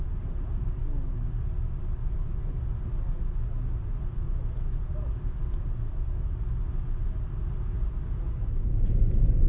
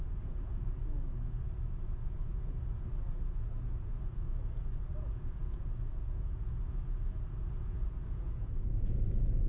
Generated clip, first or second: second